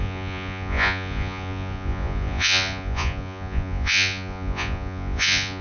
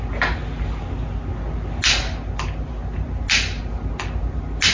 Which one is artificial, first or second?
first